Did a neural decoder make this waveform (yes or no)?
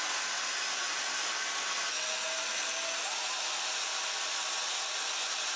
no